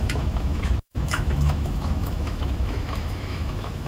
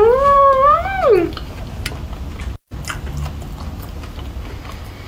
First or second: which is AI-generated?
first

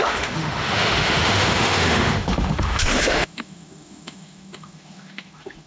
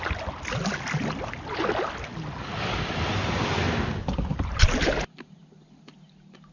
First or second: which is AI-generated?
first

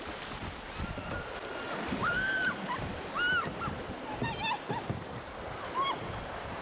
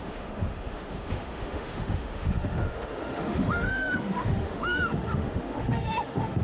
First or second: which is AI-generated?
second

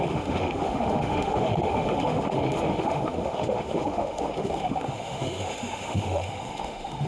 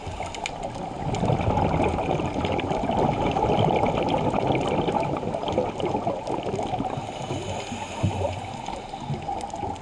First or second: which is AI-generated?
first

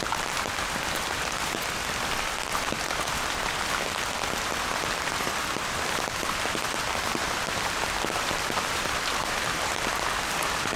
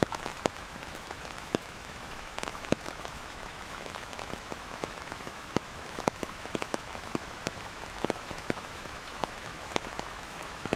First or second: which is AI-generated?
second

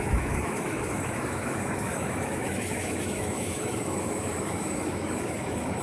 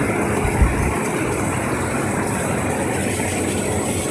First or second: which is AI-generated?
first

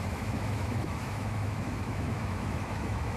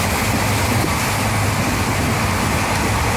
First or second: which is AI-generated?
first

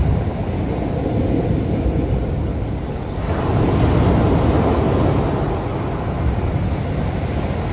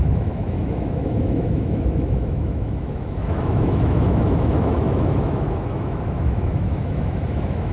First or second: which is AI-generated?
second